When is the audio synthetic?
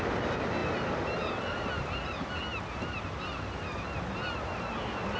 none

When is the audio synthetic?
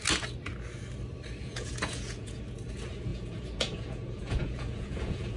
1.4-2.4 (vocoder, Vocos); 3.1-5.4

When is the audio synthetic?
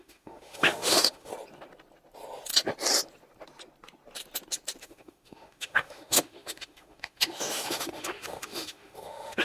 0.0-1.3 (autoencoder, DAC-VAE); 4.8-9.4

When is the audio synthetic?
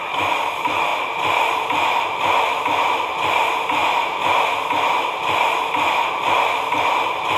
0.9-2.6 (vocoder, BigVGAN v2)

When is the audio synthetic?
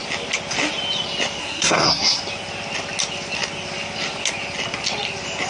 1.4-2.2 (codec, SNAC)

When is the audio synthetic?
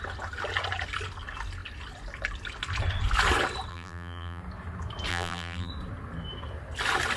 3.7-4.4 (vocoder, BigVGAN v2); 5.1-5.7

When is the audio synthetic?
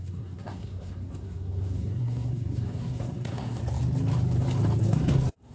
0.0-3.6 (codec, SNAC); 4.8-5.5